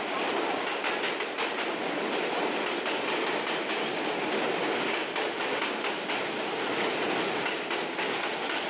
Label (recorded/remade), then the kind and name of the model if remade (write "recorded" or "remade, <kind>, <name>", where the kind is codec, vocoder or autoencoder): recorded